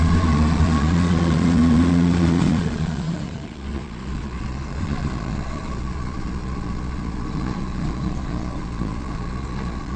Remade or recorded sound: remade